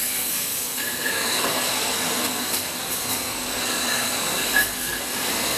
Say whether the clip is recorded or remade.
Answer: remade